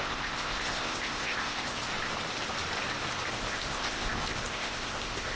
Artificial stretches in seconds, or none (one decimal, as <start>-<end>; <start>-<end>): 0.0-1.8; 3.3-5.4